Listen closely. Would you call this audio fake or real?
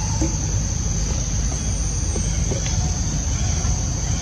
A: real